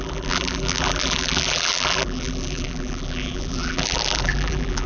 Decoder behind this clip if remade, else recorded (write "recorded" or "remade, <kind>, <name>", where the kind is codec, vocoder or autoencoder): remade, vocoder, BigVGAN v2